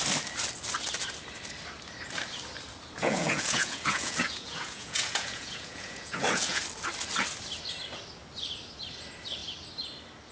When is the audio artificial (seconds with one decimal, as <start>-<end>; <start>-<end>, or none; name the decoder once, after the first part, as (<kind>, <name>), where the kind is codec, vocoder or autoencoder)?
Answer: 3.0-6.6 (vocoder, Vocos)